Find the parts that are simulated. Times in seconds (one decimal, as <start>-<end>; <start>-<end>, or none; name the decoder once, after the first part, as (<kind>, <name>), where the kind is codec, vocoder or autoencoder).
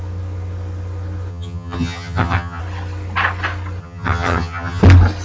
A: 1.3-2.6 (vocoder, HiFi-GAN); 3.8-4.8